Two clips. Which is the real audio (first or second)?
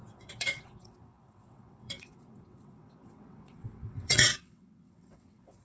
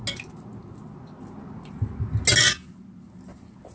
second